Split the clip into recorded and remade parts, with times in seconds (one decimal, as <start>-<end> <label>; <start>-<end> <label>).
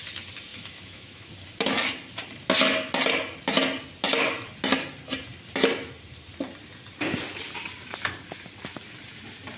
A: 0.0-0.5 recorded; 0.5-1.3 remade; 1.3-9.6 recorded